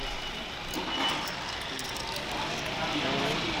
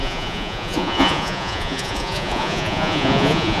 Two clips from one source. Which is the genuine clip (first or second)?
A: first